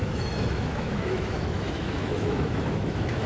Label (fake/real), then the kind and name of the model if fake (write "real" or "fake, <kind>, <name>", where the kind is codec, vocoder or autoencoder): fake, autoencoder, DAC-VAE